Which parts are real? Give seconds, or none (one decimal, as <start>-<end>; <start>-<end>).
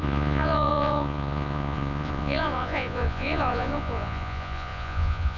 none